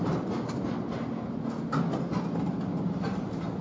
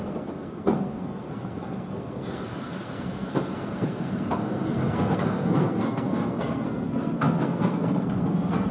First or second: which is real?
first